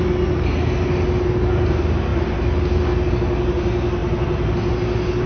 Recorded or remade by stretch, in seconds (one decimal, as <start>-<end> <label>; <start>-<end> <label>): 0.0-5.3 recorded